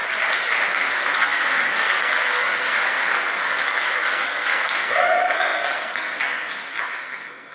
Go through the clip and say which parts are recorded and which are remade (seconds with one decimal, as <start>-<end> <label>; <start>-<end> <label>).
0.0-0.7 recorded; 0.7-7.5 remade